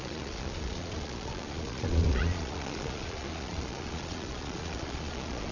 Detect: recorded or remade remade